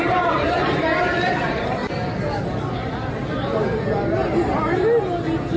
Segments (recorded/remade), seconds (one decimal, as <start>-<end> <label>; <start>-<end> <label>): 0.0-1.8 remade; 1.8-5.6 recorded